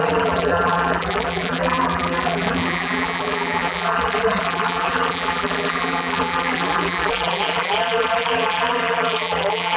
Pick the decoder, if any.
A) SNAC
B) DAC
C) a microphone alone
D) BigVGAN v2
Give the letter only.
D